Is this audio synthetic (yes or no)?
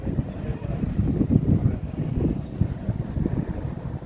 no